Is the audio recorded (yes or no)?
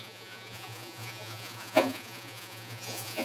no